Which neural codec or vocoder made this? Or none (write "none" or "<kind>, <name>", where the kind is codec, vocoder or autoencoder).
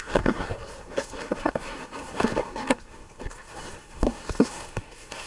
codec, SNAC